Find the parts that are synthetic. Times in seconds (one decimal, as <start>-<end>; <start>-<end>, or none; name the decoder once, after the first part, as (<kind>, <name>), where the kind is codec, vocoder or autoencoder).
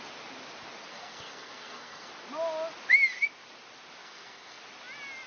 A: 0.9-2.1 (codec, SNAC); 4.0-4.6